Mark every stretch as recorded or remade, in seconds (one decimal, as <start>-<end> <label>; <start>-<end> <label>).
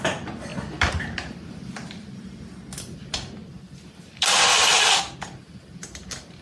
0.0-3.4 recorded; 3.4-5.0 remade; 5.0-6.4 recorded